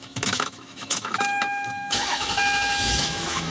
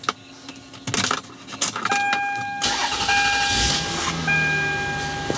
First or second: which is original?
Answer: second